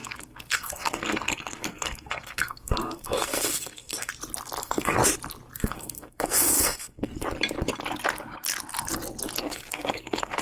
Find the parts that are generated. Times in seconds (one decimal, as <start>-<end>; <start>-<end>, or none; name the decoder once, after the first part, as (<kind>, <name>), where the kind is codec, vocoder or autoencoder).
0.0-4.1 (codec, SNAC); 4.6-5.0; 5.5-7.1; 9.4-10.4